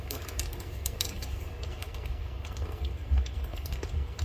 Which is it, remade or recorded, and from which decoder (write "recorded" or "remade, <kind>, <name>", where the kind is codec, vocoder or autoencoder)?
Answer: remade, codec, SNAC